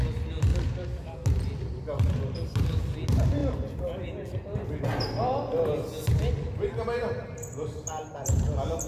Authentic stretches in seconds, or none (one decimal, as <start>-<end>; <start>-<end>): 0.0-8.9